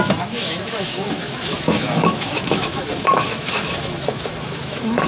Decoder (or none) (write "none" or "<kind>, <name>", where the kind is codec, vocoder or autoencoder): autoencoder, DAC-VAE